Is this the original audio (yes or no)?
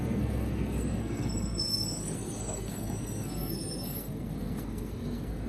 no